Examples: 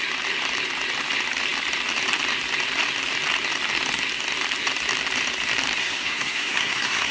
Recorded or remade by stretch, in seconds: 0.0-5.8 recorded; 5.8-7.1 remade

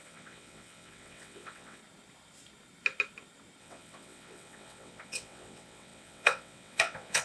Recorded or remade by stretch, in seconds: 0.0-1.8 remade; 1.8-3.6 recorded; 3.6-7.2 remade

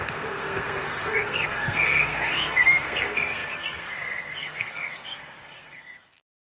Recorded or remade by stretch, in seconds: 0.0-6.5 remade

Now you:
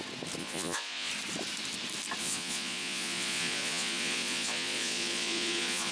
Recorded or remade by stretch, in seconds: 0.0-0.4 recorded; 0.4-1.1 remade; 1.1-2.2 recorded; 2.2-5.9 remade

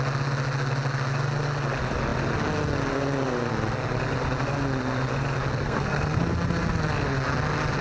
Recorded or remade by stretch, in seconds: 0.0-5.5 recorded; 5.5-6.2 remade; 6.2-7.8 recorded